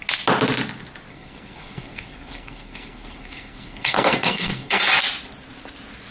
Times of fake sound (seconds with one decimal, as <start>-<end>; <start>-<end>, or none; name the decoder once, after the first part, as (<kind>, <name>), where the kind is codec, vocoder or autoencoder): 1.1-4.8 (codec, SNAC)

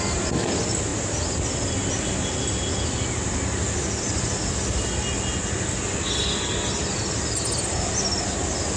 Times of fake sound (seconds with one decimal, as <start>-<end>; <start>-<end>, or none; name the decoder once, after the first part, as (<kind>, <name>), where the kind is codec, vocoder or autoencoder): none

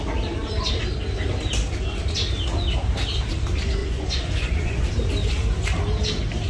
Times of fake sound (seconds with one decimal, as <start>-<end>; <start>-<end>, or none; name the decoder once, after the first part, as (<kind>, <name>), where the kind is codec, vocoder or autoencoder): 3.8-4.8 (vocoder, Vocos)

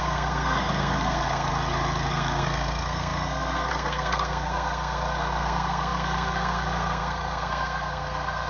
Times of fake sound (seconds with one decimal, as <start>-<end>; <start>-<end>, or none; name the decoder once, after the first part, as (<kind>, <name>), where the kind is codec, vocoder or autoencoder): 0.0-1.5 (codec, SNAC); 2.1-8.5

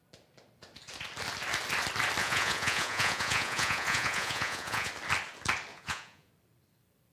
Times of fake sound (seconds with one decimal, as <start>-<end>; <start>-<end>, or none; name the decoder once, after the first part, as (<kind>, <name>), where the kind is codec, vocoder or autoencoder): 2.2-4.9 (vocoder, Vocos); 5.7-6.3

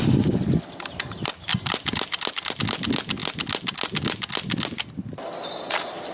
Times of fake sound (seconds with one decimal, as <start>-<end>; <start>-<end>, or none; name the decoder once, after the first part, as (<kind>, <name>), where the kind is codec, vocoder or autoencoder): none

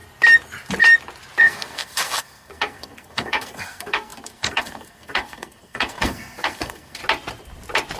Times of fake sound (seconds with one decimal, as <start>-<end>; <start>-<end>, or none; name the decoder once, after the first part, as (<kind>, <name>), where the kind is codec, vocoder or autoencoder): 1.4-7.0 (codec, SNAC)

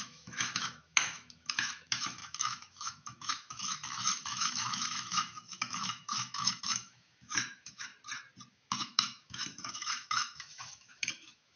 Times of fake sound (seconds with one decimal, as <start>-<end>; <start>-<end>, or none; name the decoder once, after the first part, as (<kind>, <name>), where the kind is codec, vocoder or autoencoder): 0.0-7.9 (autoencoder, DAC-VAE); 8.5-11.6